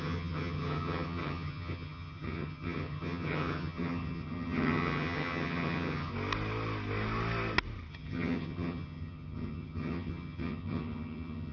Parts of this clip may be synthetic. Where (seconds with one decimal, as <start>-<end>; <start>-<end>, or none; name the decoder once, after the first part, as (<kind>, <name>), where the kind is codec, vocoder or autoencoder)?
0.0-6.1 (vocoder, HiFi-GAN); 7.9-11.5